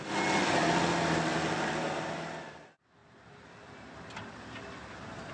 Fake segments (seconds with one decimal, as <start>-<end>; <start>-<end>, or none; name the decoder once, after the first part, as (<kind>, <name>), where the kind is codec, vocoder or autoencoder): none